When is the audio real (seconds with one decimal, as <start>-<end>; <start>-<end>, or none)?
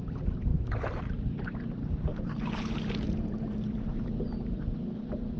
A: 0.0-0.5; 1.0-2.1; 4.7-5.4